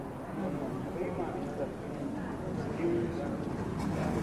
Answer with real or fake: real